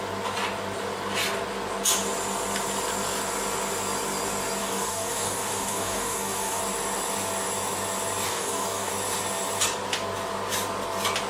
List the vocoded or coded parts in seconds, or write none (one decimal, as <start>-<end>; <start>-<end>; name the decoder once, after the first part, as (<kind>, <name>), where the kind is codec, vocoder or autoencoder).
4.6-6.6 (codec, DAC); 8.3-8.9